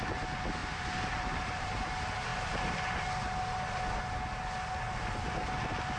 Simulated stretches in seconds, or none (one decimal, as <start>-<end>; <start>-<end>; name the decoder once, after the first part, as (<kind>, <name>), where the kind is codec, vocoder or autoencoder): 0.6-1.9 (vocoder, BigVGAN v2)